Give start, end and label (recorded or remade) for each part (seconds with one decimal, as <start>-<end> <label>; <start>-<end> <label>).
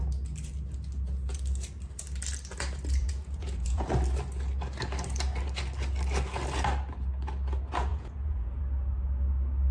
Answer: 0.0-3.0 recorded; 3.0-3.9 remade; 3.9-7.9 recorded; 7.9-8.6 remade; 8.6-9.7 recorded